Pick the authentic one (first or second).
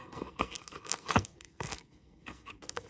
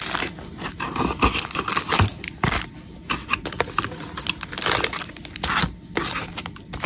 second